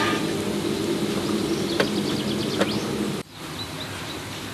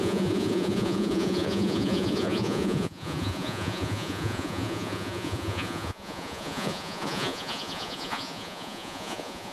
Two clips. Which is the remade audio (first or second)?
second